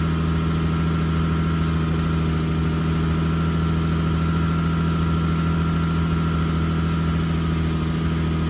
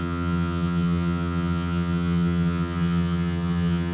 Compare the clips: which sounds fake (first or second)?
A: second